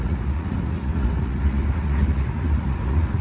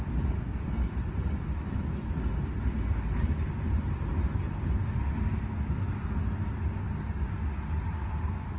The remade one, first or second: first